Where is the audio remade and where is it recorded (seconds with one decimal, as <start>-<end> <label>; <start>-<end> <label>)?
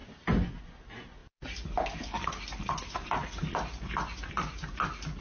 0.0-5.2 recorded